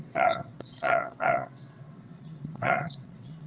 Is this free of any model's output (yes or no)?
no